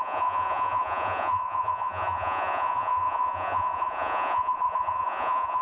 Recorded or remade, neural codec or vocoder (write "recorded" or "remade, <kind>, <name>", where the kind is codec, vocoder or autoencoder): remade, vocoder, Vocos